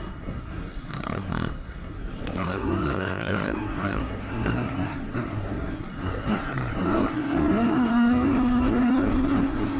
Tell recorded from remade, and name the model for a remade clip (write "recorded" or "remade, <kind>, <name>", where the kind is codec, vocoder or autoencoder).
remade, codec, SNAC